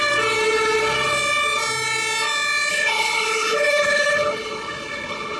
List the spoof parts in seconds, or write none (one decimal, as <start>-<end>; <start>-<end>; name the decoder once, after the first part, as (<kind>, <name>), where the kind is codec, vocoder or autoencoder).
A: 2.7-5.4 (codec, HILCodec)